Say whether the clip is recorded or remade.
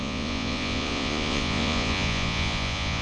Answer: remade